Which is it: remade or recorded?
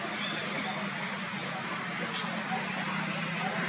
recorded